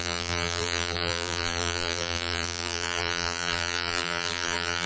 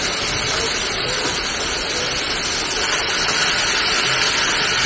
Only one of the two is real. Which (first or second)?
second